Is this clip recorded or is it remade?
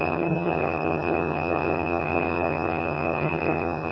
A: remade